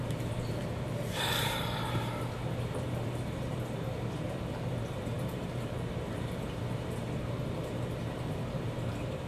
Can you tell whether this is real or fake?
fake